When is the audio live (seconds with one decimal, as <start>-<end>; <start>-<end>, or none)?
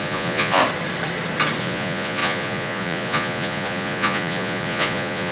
0.6-1.6